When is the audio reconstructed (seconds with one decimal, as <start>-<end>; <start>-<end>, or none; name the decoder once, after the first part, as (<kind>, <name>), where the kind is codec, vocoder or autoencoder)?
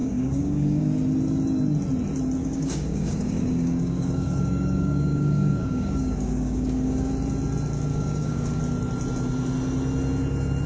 0.0-0.8 (codec, DAC); 2.4-7.1; 7.9-8.6